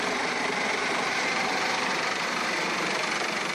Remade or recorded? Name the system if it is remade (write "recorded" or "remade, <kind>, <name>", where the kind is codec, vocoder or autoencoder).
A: recorded